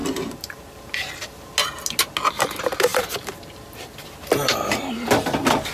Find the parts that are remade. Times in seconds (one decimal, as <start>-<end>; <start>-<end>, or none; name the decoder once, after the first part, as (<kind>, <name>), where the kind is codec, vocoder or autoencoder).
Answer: 2.9-4.9 (vocoder, BigVGAN v2)